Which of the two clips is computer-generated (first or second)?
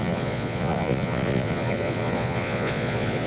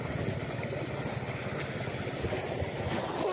first